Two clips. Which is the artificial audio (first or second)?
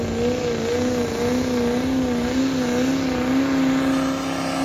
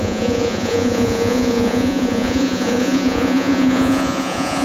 second